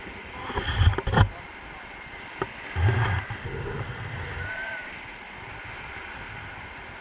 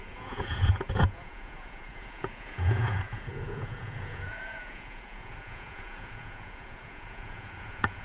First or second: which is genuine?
first